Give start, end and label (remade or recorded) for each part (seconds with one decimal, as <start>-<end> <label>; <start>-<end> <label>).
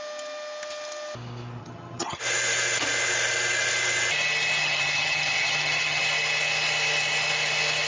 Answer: 0.0-1.6 recorded; 1.6-2.2 remade; 2.2-4.6 recorded; 4.6-6.0 remade; 6.0-7.9 recorded